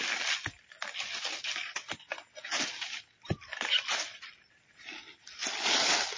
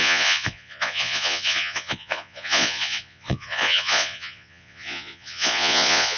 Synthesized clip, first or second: second